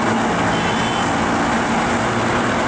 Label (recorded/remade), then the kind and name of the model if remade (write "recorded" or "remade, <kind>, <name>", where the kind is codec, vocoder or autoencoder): recorded